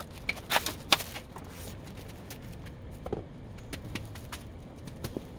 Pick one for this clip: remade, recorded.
recorded